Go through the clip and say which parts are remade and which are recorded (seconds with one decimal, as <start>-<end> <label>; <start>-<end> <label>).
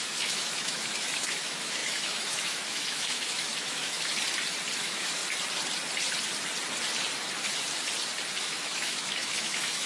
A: 0.0-4.1 remade; 4.1-4.8 recorded; 4.8-5.2 remade; 5.2-8.4 recorded; 8.4-9.9 remade